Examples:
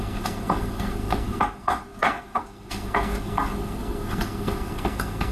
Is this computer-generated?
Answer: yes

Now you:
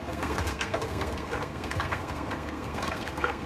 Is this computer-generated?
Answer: yes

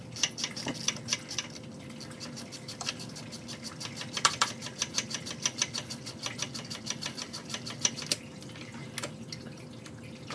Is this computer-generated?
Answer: no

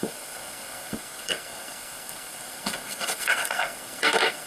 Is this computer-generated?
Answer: yes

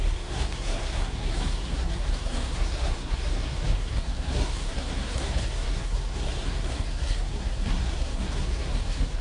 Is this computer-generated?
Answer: yes